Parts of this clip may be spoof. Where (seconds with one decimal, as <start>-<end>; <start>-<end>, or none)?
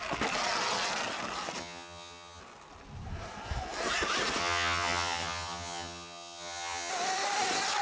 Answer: 1.6-2.4; 4.4-6.9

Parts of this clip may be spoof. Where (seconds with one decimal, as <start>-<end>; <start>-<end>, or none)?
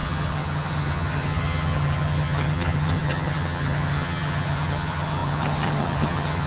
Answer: 0.0-6.5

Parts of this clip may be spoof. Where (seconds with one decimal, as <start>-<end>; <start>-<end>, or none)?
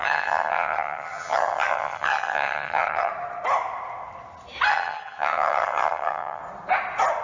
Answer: 0.0-3.1; 4.7-6.4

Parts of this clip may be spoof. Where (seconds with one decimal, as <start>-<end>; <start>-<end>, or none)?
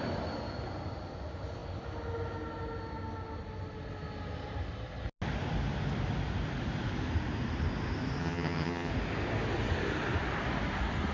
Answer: 8.2-8.9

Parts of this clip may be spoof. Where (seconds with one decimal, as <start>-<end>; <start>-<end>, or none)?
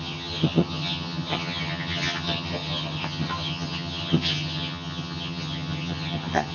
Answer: 0.0-6.5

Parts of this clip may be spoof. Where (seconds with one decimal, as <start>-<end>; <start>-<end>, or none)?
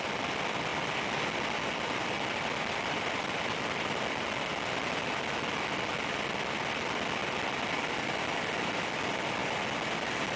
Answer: none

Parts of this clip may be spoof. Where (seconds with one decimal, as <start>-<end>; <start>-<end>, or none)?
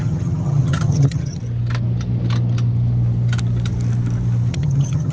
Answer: 0.0-1.4; 4.5-5.1